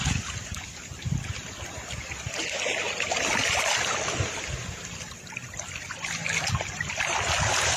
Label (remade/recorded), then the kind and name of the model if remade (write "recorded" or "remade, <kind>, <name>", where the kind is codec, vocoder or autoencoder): recorded